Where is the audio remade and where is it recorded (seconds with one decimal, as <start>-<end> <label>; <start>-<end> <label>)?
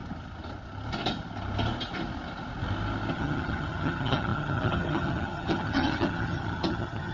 0.0-3.1 recorded; 3.1-7.1 remade